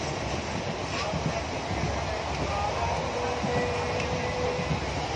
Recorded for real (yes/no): yes